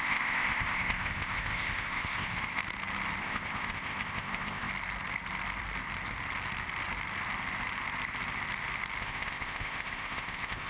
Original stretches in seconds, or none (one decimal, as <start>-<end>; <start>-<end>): 2.6-3.2; 4.7-9.0